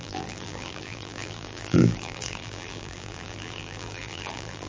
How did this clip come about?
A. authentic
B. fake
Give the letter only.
B